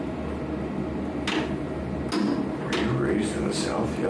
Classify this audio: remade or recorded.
recorded